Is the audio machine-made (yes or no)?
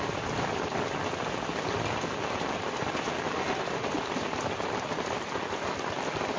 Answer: no